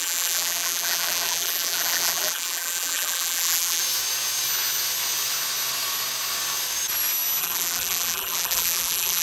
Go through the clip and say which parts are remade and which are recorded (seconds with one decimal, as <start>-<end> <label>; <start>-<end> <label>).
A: 0.0-3.8 remade; 3.8-7.4 recorded; 7.4-9.2 remade